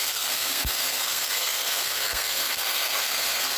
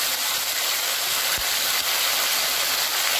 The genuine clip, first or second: second